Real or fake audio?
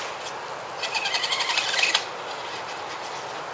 real